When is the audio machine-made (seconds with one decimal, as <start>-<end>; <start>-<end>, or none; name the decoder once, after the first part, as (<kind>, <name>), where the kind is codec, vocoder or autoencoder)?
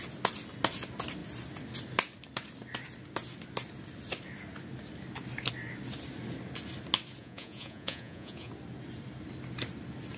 7.2-8.5 (vocoder, Vocos)